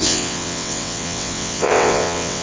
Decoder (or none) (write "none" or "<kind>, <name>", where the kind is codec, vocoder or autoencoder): vocoder, WaveNeXt